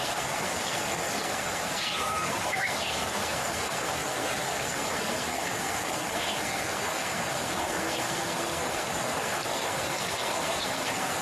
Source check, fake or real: fake